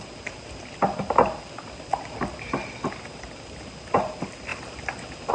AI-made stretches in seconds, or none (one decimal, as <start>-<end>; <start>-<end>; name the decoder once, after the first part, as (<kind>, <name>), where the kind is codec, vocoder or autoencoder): none